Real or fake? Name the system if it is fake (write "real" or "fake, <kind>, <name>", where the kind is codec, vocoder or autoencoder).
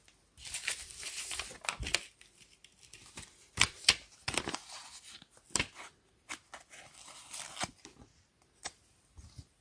real